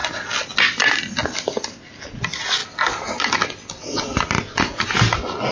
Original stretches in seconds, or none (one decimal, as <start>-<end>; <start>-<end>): 0.0-5.5

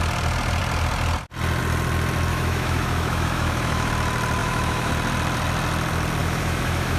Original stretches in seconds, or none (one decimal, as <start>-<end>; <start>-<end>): 0.0-2.3; 3.9-4.4; 4.9-6.2